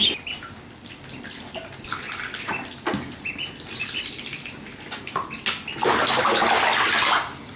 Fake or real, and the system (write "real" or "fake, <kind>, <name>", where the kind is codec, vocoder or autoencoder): real